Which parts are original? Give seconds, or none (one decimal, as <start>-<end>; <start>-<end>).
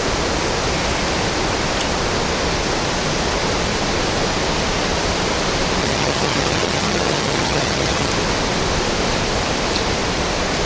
0.0-5.8; 8.1-10.7